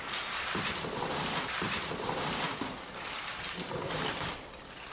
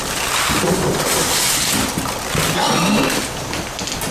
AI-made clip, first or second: first